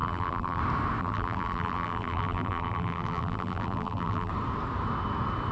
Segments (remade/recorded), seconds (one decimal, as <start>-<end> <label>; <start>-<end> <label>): 0.0-0.6 remade; 0.6-1.0 recorded; 1.0-4.3 remade; 4.3-5.5 recorded